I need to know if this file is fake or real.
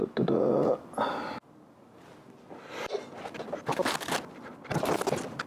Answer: real